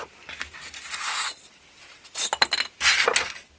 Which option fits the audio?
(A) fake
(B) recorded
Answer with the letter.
B